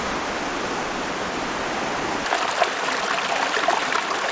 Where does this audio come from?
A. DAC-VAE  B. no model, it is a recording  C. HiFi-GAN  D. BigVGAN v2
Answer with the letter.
B